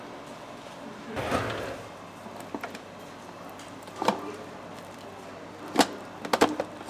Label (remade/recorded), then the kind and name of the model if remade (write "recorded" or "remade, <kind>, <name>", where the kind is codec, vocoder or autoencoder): recorded